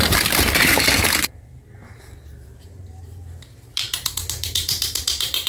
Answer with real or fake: fake